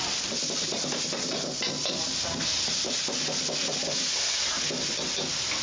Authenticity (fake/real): real